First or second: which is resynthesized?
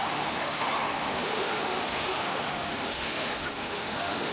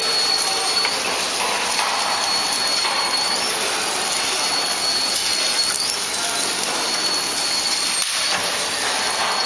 first